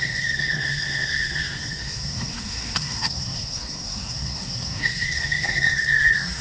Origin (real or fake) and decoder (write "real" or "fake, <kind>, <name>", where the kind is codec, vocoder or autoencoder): fake, codec, SNAC